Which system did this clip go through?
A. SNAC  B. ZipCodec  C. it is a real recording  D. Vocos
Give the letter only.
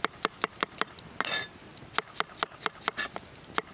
C